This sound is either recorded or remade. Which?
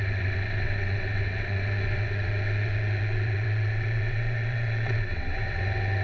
remade